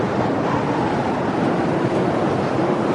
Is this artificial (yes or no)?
no